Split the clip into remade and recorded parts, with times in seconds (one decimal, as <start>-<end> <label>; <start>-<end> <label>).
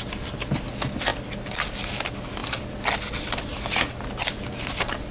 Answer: 0.0-5.1 recorded